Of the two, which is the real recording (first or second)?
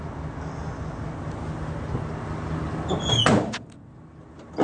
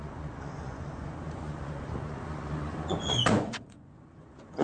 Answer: first